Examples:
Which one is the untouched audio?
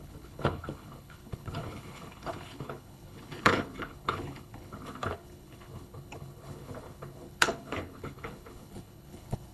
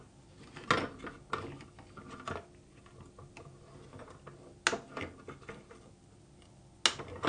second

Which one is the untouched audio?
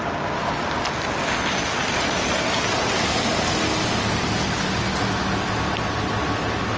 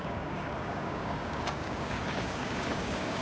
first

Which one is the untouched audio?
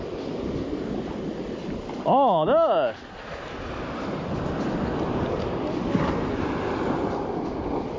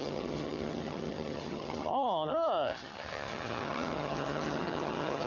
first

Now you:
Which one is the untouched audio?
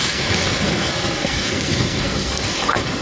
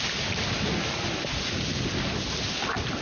second